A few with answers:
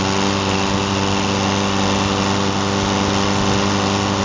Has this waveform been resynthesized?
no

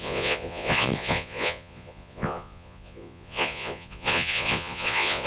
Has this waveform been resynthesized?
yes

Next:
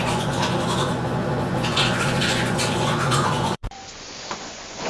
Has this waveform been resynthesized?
yes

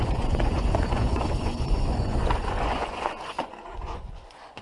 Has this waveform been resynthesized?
yes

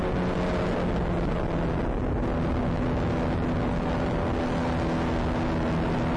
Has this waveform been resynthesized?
no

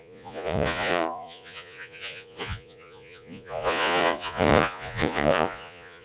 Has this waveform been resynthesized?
yes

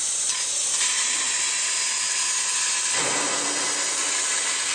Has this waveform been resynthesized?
no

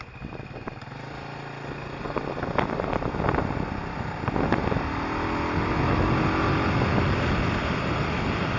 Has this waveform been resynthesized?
no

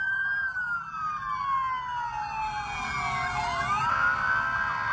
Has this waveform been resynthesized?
no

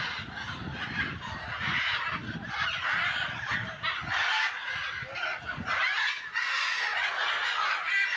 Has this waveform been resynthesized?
no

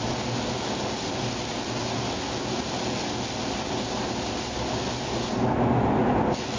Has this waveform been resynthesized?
no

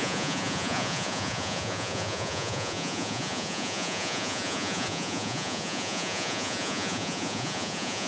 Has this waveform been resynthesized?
yes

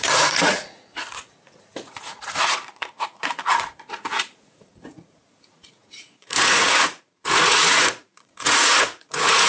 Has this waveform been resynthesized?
yes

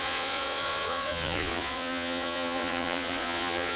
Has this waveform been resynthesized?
yes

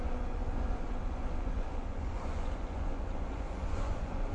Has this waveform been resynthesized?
yes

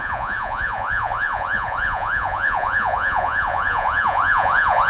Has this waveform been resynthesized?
yes